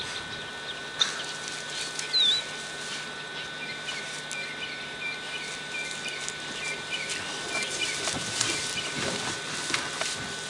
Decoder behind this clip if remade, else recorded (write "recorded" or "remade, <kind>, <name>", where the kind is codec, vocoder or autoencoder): recorded